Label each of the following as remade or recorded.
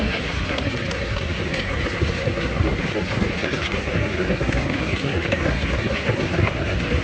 remade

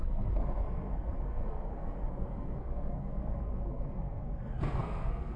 remade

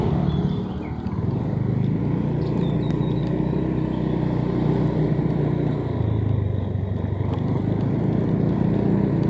recorded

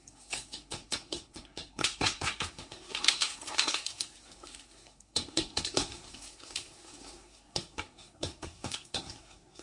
remade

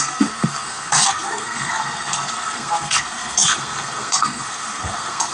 remade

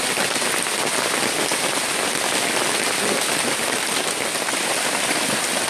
recorded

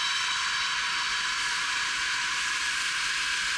recorded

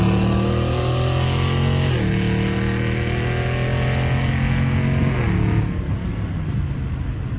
recorded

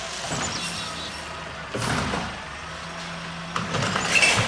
recorded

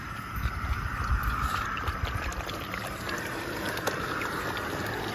recorded